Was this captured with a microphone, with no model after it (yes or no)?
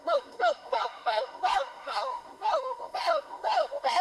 no